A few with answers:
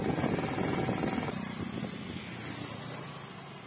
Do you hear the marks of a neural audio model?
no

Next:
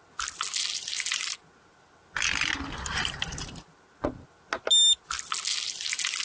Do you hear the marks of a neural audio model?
no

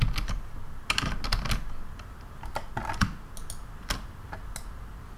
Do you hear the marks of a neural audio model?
no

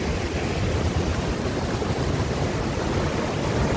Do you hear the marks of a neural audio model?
no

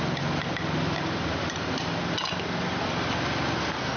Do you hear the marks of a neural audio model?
no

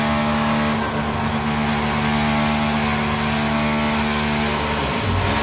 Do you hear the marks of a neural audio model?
no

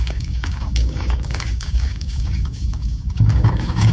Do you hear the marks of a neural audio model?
yes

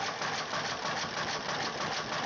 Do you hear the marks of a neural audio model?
no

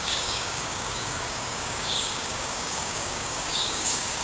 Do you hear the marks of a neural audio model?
yes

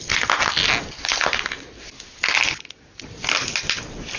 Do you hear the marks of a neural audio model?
no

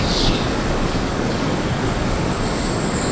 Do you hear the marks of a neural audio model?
yes